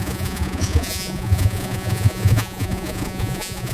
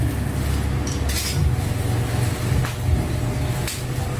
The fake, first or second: first